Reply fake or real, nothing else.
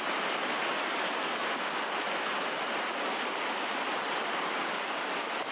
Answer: real